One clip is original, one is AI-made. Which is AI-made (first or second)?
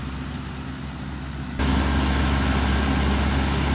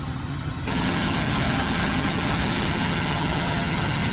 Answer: second